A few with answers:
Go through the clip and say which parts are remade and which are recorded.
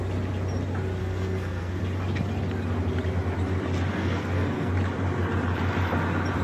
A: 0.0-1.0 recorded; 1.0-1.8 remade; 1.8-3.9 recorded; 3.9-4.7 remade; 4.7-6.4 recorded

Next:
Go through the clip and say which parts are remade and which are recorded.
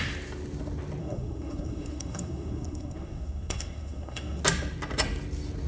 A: 0.0-1.0 recorded; 1.0-4.4 remade; 4.4-5.7 recorded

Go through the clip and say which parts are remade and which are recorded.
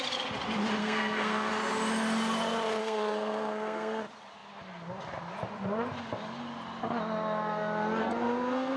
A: 0.0-0.8 recorded; 0.8-1.5 remade; 1.5-2.8 recorded; 2.8-4.0 remade; 4.0-8.0 recorded; 8.0-8.8 remade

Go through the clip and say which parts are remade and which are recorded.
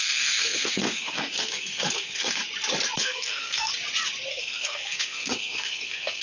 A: 0.0-2.4 remade; 2.4-3.0 recorded; 3.0-3.7 remade; 3.7-4.3 recorded; 4.3-6.2 remade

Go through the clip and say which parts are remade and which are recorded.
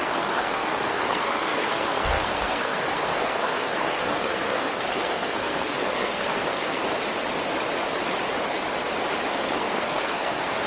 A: 0.0-6.8 remade; 6.8-9.3 recorded; 9.3-10.7 remade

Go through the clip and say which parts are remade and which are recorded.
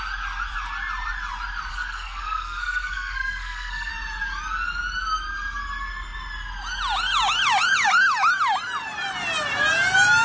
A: 0.0-1.7 recorded; 1.7-3.9 remade; 3.9-10.2 recorded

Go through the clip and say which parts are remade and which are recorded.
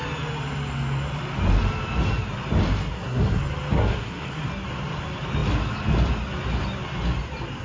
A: 0.0-2.8 recorded; 2.8-3.4 remade; 3.4-3.8 recorded; 3.8-4.5 remade; 4.5-7.6 recorded